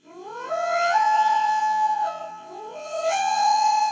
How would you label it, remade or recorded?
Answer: remade